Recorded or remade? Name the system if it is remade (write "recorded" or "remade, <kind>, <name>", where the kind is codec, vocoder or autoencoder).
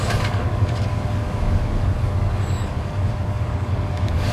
remade, codec, DAC